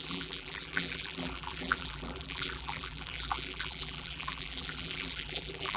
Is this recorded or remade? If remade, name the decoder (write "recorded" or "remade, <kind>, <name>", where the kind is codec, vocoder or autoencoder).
remade, vocoder, BigVGAN v2